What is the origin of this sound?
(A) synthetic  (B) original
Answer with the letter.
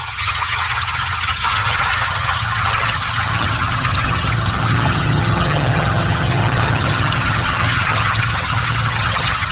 A